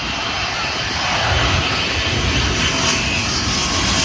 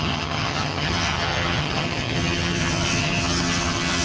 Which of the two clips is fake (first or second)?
second